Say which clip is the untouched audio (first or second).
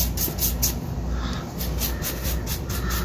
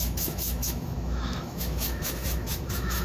first